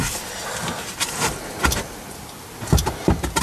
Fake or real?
real